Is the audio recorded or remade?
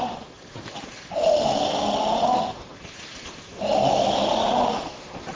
recorded